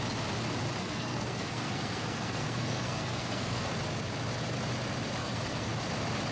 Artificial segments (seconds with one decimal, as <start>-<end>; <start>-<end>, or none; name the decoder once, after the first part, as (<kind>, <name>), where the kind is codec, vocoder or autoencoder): 0.8-3.7 (codec, SNAC); 5.2-5.7